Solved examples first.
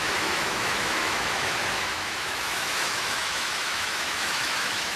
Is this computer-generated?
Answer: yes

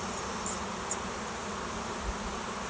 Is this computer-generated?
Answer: no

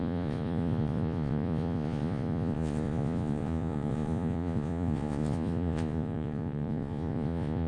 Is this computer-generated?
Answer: yes